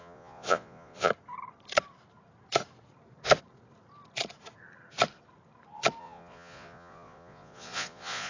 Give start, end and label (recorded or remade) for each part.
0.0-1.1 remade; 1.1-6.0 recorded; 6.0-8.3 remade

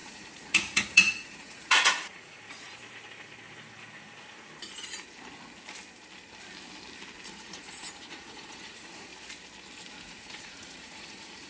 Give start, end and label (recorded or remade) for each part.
0.0-2.8 remade; 2.8-7.3 recorded; 7.3-9.1 remade; 9.1-10.0 recorded; 10.0-11.5 remade

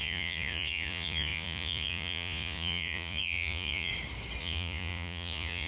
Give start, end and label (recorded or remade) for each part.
0.0-3.9 remade; 3.9-4.4 recorded; 4.4-5.7 remade

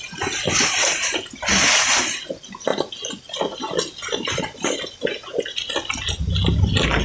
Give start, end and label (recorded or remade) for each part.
0.0-7.0 recorded

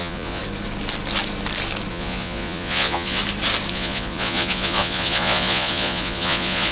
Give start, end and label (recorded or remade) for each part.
0.0-0.4 remade; 0.4-1.9 recorded; 1.9-3.2 remade; 3.2-3.7 recorded; 3.7-6.7 remade

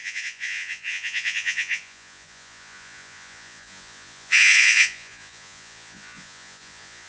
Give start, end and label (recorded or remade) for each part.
0.0-7.1 remade